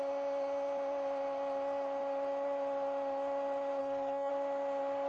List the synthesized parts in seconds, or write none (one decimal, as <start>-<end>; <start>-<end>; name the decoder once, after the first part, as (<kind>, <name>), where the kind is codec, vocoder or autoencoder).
3.8-4.3 (codec, SNAC)